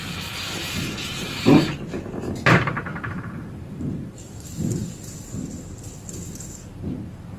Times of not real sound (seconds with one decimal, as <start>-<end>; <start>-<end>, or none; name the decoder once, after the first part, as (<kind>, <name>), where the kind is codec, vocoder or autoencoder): 0.6-1.7 (vocoder, BigVGAN v2); 2.9-4.3